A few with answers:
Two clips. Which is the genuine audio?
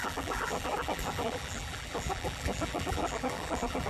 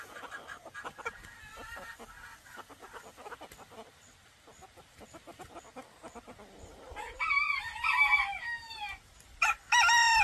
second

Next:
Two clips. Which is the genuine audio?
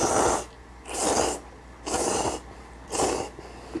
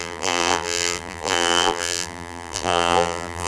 first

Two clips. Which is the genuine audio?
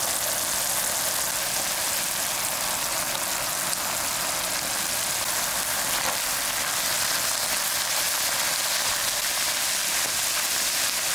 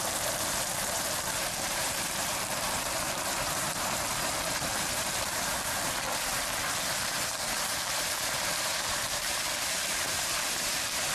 first